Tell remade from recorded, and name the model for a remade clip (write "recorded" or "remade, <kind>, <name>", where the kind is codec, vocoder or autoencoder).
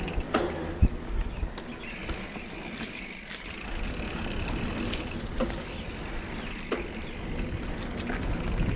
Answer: recorded